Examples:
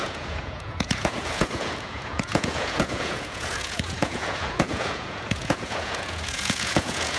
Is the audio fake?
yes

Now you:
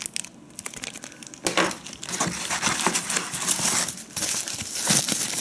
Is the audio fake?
no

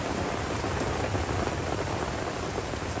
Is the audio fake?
no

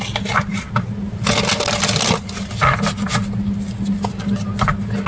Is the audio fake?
no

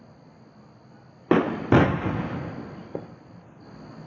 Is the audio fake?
no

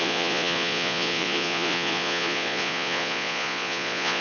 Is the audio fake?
yes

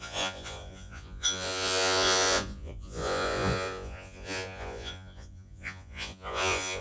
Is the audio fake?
yes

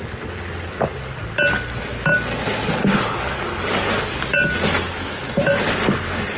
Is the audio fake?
no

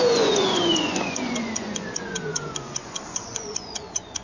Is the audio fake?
yes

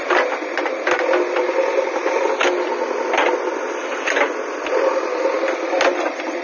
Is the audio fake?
no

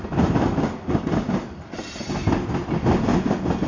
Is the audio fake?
no